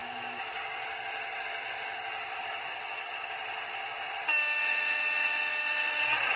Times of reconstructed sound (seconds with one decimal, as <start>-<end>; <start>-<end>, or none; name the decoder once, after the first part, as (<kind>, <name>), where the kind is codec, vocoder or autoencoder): 2.7-3.3 (vocoder, WaveNeXt); 4.6-6.4